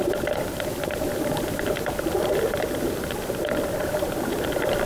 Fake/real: fake